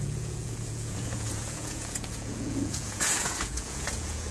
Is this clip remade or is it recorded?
remade